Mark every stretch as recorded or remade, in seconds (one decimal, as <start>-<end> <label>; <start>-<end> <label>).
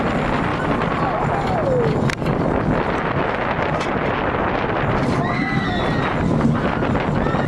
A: 0.0-7.5 recorded